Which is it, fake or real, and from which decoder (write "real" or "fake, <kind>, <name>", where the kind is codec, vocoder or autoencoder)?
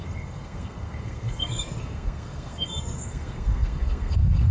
fake, codec, SNAC